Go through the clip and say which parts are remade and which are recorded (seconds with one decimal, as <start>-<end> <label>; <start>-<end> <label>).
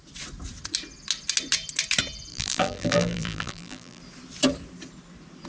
0.0-2.3 recorded; 2.3-4.0 remade; 4.0-5.5 recorded